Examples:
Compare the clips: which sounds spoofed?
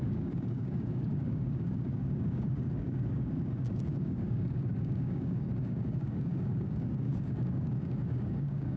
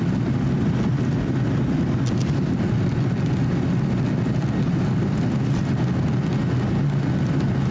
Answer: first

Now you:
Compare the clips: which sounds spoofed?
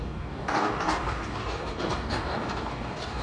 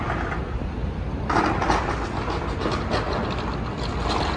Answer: first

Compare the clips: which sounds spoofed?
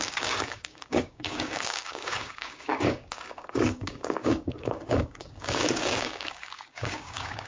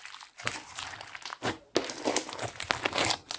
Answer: first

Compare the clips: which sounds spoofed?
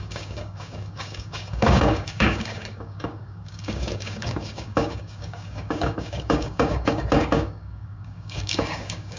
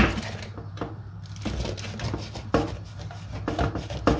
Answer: first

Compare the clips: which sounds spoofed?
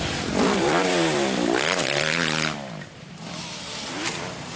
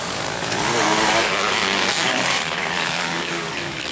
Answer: second